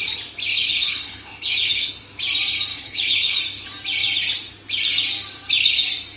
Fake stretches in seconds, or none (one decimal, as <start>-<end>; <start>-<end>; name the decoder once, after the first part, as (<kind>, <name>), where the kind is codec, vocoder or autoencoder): 0.5-1.9 (codec, HILCodec); 2.7-3.4